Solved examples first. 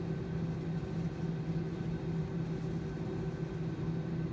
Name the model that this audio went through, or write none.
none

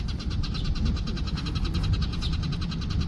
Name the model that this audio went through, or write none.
none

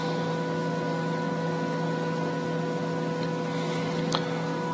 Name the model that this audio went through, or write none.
none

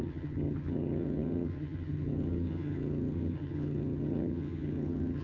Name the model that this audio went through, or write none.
vocoder, HiFi-GAN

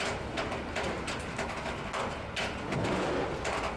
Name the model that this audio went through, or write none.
none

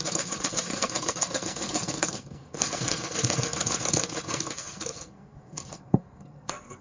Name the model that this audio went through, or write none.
codec, SNAC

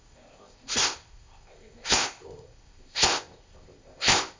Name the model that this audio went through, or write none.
codec, ZipCodec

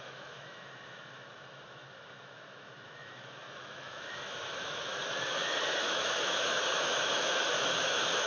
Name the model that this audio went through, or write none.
autoencoder, DAC-VAE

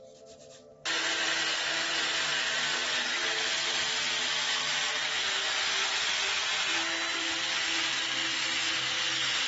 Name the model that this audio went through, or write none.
none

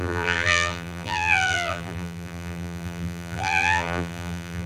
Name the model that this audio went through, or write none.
vocoder, BigVGAN v2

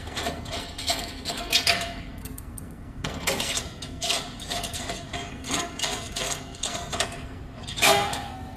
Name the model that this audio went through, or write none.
codec, SNAC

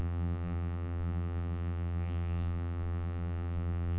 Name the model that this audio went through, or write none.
vocoder, BigVGAN v2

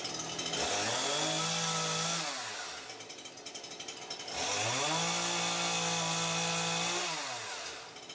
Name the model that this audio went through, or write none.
none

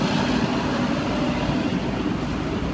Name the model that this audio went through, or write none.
none